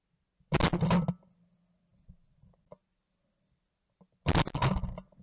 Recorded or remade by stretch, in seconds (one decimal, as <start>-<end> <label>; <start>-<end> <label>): 0.0-5.2 recorded